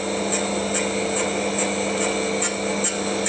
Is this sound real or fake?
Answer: real